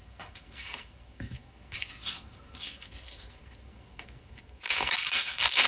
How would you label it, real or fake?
fake